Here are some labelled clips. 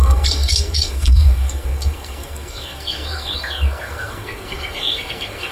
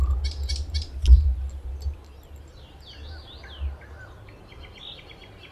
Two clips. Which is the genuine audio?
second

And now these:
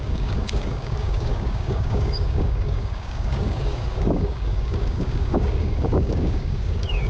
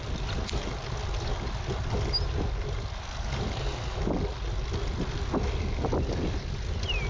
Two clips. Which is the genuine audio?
second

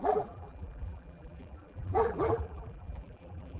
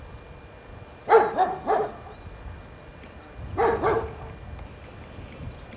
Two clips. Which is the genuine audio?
second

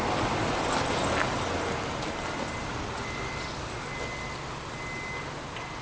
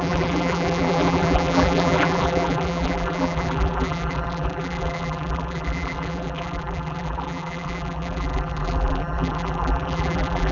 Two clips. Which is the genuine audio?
first